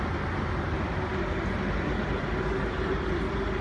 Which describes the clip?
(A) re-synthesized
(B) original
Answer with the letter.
B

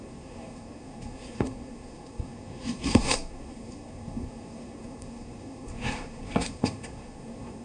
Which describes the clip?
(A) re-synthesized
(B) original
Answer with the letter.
A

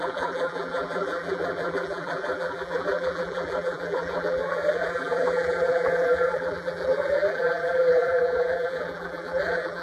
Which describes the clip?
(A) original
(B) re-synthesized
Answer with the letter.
B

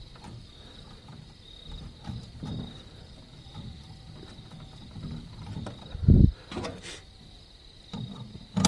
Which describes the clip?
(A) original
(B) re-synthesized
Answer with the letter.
A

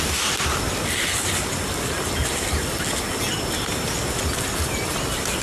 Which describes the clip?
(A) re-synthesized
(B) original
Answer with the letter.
B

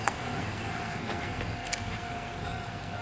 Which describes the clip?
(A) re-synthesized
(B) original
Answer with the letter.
A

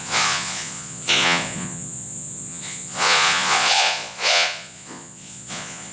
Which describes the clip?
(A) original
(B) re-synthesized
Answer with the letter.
B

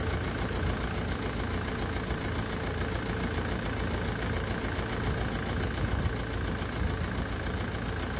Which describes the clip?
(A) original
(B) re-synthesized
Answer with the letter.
A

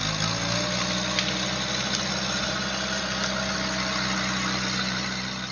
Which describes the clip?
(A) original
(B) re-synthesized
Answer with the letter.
A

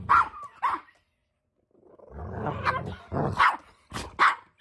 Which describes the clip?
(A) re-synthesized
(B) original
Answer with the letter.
B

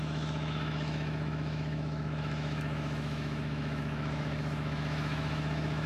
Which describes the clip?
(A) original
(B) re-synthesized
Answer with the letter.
B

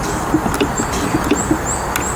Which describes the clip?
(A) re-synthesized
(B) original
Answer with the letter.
B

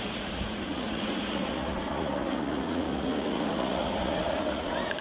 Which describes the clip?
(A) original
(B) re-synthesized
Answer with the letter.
B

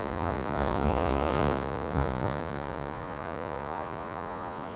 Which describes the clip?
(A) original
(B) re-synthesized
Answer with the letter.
B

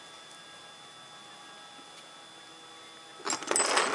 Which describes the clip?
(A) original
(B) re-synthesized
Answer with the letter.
A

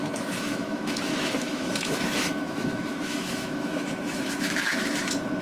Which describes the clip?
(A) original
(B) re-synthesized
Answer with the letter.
B